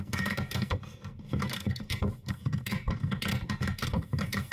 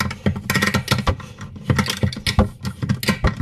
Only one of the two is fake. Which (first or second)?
first